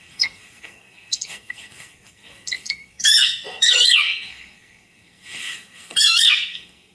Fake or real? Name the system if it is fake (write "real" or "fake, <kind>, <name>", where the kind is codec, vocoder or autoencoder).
fake, codec, SNAC